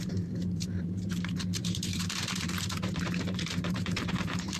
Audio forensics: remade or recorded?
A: remade